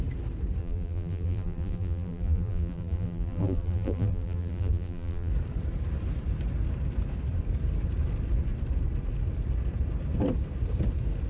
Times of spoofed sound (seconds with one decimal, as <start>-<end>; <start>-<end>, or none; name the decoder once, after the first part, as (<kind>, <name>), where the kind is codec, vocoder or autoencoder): 0.6-5.3 (vocoder, BigVGAN v2)